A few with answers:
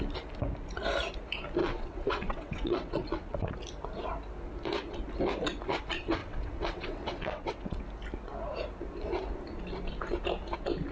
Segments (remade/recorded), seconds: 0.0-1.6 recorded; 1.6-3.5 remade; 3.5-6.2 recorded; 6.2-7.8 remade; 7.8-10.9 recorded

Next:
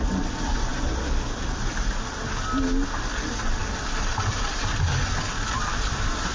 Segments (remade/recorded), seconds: 0.0-6.3 recorded